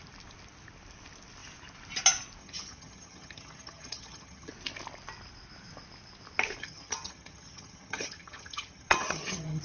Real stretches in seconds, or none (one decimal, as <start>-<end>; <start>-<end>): 0.0-2.4; 4.5-6.6